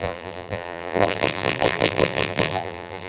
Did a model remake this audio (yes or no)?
yes